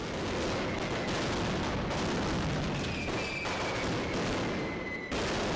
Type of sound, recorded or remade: recorded